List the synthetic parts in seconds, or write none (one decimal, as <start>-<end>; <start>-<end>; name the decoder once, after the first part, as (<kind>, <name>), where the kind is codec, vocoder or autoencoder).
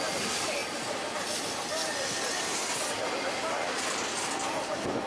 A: none